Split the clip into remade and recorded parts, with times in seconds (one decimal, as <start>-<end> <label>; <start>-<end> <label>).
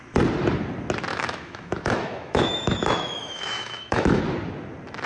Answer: 0.0-1.1 recorded; 1.1-4.2 remade; 4.2-5.1 recorded